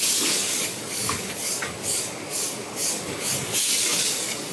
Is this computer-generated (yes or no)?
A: yes